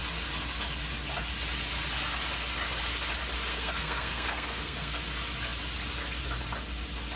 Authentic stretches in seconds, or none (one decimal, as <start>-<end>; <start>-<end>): 0.0-3.5; 5.0-7.2